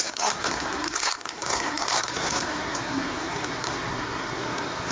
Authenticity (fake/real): fake